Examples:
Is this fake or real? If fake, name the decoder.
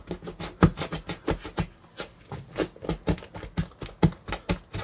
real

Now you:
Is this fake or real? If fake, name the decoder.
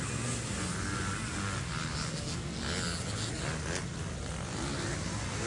real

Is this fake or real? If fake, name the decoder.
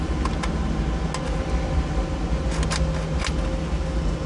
real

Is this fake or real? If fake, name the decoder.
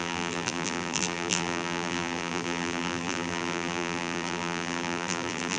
fake, vocoder, BigVGAN v2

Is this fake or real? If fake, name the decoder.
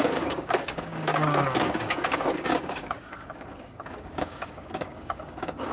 fake, codec, DAC